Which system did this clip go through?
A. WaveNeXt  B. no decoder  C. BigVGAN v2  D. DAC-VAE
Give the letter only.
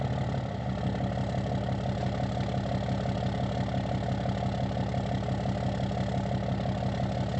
B